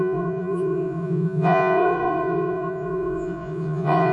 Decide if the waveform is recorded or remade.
remade